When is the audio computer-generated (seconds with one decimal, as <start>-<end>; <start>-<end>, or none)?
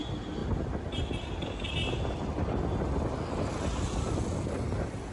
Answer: none